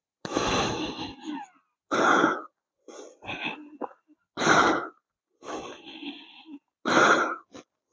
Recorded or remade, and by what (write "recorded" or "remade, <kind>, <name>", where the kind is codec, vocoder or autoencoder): recorded